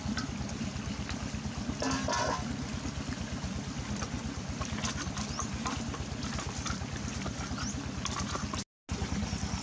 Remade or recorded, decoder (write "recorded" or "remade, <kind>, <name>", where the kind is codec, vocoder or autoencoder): recorded